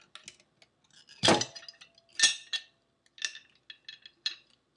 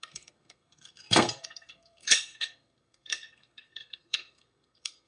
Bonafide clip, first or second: first